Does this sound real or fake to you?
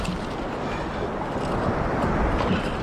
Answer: real